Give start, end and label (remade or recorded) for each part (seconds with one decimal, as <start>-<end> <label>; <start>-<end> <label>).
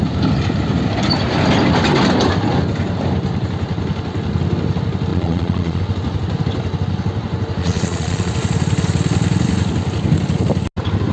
0.0-5.1 recorded; 5.1-5.8 remade; 5.8-7.6 recorded; 7.6-8.3 remade; 8.3-11.1 recorded